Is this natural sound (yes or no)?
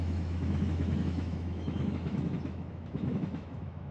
no